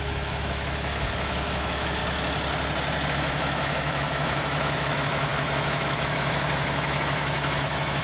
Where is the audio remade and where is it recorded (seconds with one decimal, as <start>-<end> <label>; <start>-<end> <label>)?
0.0-2.0 remade; 2.0-3.1 recorded; 3.1-8.0 remade